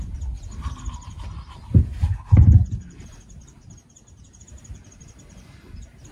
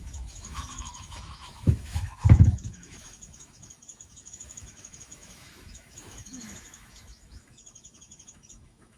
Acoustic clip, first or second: first